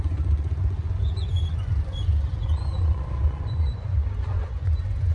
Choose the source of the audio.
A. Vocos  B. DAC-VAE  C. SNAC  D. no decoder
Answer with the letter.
A